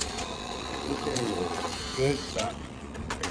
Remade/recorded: remade